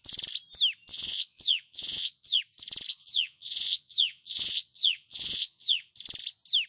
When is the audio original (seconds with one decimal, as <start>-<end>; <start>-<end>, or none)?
0.0-0.9; 2.4-2.9; 5.9-6.7